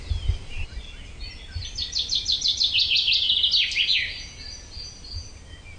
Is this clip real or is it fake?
real